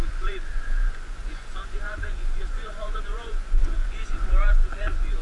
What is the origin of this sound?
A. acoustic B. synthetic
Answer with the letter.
B